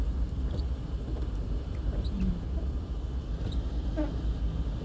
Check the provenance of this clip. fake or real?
fake